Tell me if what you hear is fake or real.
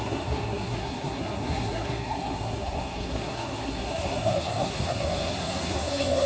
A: fake